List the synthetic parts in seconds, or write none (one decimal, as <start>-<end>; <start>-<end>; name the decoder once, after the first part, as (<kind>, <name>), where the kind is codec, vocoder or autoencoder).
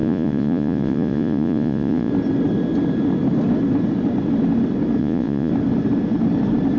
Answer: 0.0-2.1 (vocoder, Vocos); 5.0-5.5